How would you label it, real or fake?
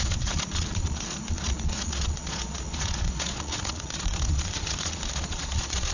fake